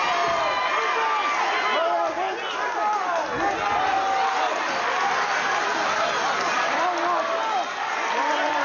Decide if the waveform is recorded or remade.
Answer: recorded